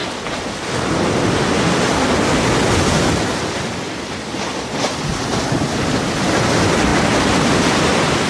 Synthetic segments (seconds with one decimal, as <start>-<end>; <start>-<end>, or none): 6.9-8.3